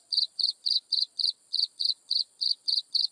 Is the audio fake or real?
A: fake